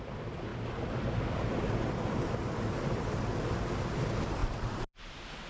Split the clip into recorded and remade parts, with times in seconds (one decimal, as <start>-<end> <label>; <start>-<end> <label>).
0.0-5.5 recorded